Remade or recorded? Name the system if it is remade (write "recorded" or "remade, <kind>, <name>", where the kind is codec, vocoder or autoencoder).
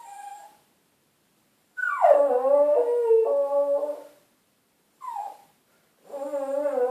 recorded